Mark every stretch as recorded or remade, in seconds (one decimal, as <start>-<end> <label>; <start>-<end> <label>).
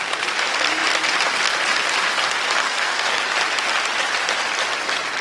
0.0-2.6 recorded; 2.6-3.2 remade; 3.2-5.2 recorded